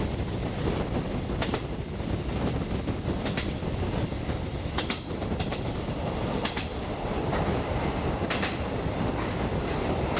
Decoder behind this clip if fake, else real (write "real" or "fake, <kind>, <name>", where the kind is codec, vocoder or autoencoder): real